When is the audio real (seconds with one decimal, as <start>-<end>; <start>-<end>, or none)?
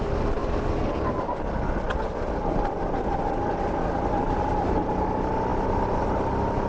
0.0-6.7